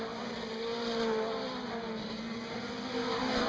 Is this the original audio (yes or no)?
yes